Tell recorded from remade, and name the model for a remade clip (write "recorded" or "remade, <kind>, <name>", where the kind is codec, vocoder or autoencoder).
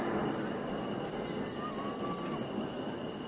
recorded